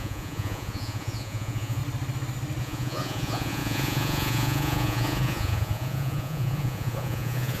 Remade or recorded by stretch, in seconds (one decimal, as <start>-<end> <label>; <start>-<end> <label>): 0.0-1.8 remade; 1.8-2.6 recorded; 2.6-7.6 remade